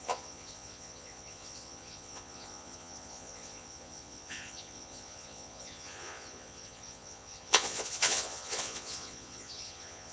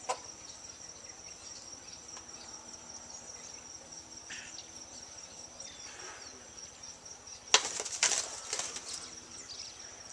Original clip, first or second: second